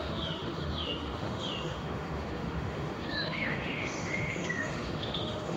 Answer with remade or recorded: remade